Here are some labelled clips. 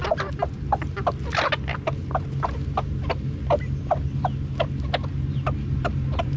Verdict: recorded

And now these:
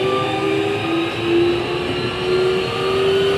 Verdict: recorded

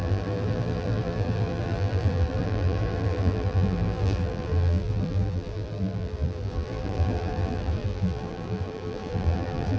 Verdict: remade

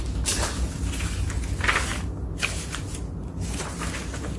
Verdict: recorded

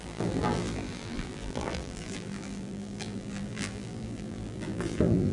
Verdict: remade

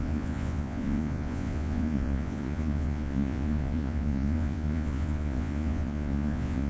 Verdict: remade